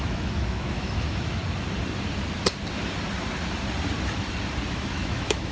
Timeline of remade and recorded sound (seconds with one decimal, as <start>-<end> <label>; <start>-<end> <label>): 0.0-1.4 remade; 1.4-4.7 recorded; 4.7-5.5 remade